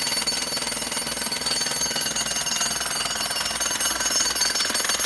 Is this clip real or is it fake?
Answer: real